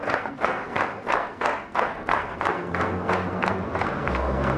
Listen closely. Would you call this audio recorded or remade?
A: remade